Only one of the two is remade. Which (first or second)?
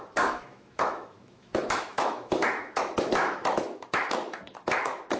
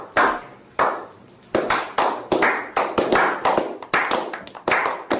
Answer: first